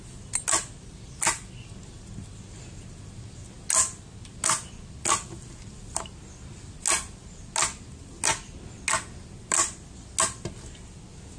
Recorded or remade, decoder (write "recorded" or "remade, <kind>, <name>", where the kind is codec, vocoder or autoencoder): recorded